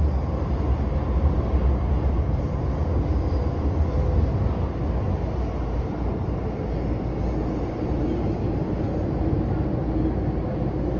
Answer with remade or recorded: recorded